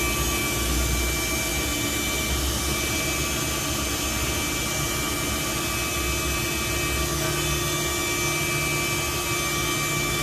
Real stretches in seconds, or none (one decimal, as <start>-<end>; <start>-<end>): 0.0-10.2